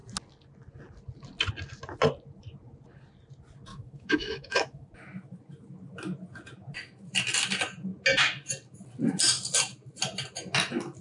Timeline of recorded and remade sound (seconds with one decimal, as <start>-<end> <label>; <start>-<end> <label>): 0.0-3.7 recorded; 3.7-4.9 remade; 4.9-11.0 recorded